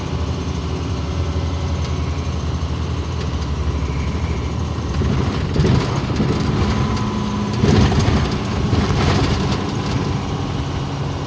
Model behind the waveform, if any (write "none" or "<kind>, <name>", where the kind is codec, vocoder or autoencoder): none